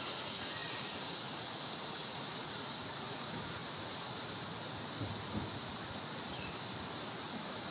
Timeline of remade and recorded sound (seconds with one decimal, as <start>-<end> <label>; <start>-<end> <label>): 0.0-3.6 remade; 3.6-7.2 recorded; 7.2-7.7 remade

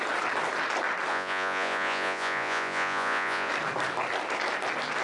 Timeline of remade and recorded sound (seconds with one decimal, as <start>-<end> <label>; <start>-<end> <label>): 0.0-1.1 recorded; 1.1-3.5 remade; 3.5-5.0 recorded